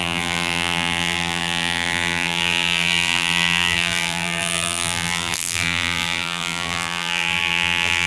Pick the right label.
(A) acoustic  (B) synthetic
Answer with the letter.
B